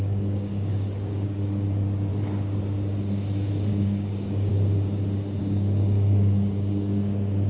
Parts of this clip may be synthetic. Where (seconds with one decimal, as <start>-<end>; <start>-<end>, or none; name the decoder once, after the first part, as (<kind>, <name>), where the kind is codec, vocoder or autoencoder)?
0.0-2.1 (codec, DAC); 3.7-4.5; 5.4-7.5

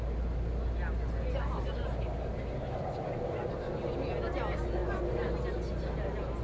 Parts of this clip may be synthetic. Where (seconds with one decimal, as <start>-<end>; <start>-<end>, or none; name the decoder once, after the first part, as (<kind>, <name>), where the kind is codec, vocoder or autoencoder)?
none

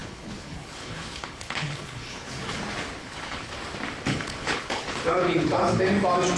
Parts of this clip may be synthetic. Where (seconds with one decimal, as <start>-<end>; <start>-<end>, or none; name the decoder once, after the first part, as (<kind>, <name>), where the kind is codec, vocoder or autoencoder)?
0.0-2.6 (codec, HILCodec); 3.0-3.5; 4.1-5.8

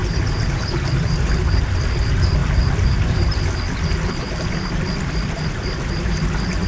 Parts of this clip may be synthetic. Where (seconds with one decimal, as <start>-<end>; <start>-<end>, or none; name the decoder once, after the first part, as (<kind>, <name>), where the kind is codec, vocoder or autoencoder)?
0.0-0.9 (vocoder, BigVGAN v2)

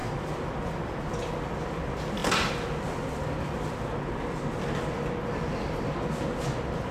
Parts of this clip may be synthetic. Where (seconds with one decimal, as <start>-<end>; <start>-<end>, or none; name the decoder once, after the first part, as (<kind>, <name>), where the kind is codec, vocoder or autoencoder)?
none

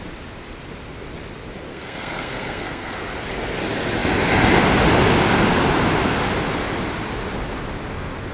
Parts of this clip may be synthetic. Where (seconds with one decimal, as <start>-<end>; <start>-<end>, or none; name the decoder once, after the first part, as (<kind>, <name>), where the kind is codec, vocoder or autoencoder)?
1.7-3.0 (codec, SNAC)

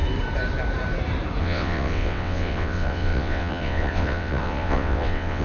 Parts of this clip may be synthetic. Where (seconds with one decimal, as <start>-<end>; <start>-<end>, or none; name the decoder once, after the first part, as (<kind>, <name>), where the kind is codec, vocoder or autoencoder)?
1.4-5.4 (vocoder, WaveNeXt)